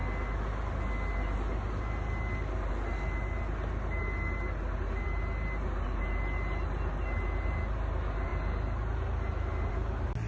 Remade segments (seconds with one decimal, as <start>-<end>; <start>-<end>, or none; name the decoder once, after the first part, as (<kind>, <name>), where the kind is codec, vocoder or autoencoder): none